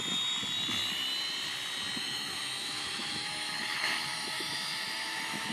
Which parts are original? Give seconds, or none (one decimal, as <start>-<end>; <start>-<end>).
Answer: 0.0-2.0

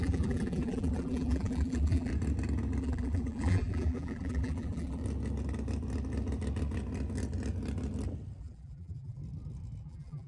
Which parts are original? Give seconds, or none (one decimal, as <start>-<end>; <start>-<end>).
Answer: 2.1-2.8; 5.0-8.4; 9.2-9.8